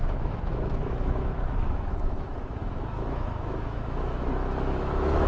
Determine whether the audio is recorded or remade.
remade